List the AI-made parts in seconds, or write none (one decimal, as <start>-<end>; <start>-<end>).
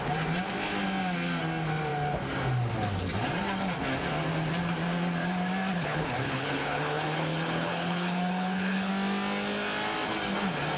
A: 5.7-8.9